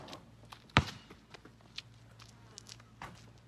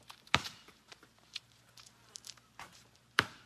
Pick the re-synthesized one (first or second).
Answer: second